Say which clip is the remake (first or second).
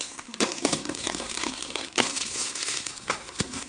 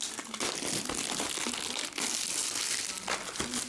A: first